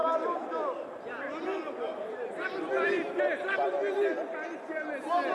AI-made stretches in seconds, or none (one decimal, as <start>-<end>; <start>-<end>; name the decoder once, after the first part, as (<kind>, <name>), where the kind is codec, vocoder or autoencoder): 0.0-3.8 (vocoder, BigVGAN v2)